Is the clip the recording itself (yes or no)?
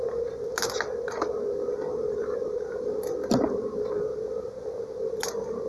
yes